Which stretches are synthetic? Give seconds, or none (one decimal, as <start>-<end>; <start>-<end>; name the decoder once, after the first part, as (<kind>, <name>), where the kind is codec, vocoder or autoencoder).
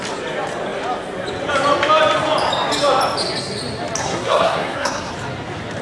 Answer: 4.0-5.1 (codec, SNAC)